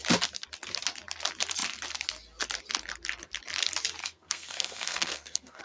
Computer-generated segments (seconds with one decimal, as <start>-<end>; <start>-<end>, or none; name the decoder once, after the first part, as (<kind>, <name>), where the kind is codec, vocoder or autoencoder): 4.0-5.6 (codec, SNAC)